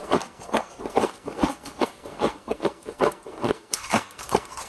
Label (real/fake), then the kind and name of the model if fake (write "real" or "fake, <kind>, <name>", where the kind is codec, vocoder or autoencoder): fake, codec, SNAC